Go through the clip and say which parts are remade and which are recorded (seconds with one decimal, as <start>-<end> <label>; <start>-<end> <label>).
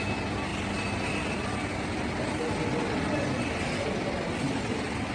0.0-5.1 recorded